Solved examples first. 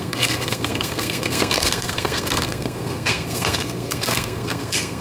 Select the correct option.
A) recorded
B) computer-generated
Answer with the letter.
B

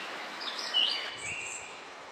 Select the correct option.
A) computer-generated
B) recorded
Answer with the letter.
A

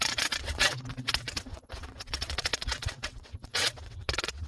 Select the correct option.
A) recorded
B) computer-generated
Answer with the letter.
B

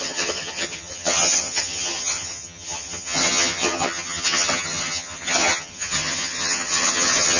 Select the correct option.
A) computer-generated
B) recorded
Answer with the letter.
A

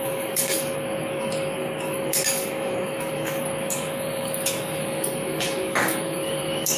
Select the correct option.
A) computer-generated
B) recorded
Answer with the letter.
A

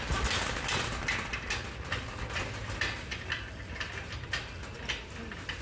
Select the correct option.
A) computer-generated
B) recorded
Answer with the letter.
B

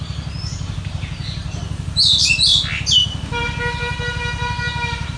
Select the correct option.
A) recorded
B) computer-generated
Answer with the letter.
A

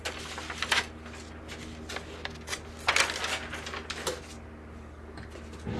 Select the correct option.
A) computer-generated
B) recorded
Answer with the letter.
B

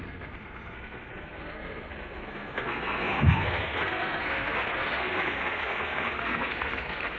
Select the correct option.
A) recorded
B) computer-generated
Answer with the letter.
B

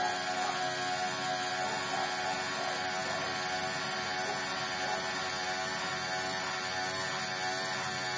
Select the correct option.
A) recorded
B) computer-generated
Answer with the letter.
A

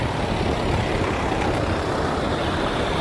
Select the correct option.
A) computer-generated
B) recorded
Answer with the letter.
A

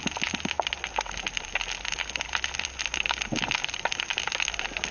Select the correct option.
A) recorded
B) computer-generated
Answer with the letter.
A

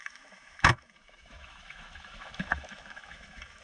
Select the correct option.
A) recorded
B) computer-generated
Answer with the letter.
B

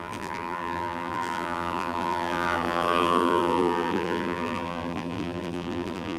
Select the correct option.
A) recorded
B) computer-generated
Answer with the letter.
B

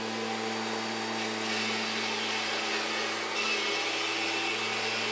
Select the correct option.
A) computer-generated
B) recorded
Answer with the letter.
B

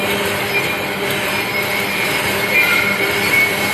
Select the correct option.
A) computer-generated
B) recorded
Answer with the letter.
B